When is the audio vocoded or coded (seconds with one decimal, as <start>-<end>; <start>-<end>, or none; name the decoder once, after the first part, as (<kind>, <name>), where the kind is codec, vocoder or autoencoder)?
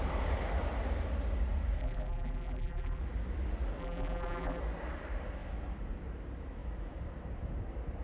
1.8-3.0 (vocoder, BigVGAN v2); 3.8-4.6